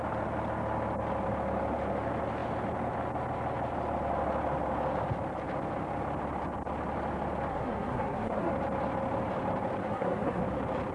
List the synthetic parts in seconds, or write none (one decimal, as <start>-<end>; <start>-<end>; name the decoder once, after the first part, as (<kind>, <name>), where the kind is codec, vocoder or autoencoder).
7.5-8.5 (codec, SNAC); 9.8-10.4